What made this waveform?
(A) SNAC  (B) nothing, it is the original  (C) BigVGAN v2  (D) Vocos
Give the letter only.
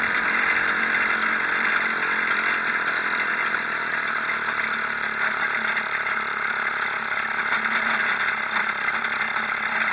B